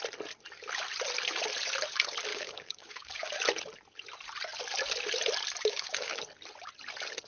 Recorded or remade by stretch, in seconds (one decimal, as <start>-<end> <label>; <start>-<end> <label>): 0.0-2.3 recorded; 2.3-3.3 remade; 3.3-5.6 recorded; 5.6-6.2 remade; 6.2-7.3 recorded